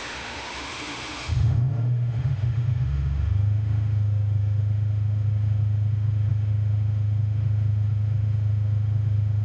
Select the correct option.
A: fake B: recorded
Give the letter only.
A